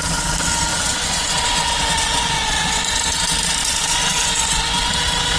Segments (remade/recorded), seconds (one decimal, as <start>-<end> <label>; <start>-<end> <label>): 0.0-0.7 recorded; 0.7-3.1 remade; 3.1-3.6 recorded; 3.6-4.9 remade; 4.9-5.4 recorded